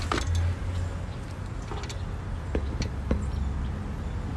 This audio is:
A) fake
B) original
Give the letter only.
B